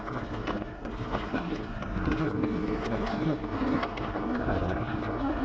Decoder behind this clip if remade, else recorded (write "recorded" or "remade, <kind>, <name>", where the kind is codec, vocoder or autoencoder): remade, codec, SNAC